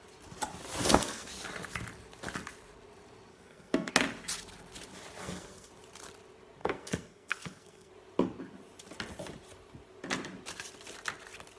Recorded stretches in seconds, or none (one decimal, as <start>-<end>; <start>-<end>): 0.0-0.8; 1.3-3.3; 3.9-5.2; 5.7-6.6; 7.9-11.6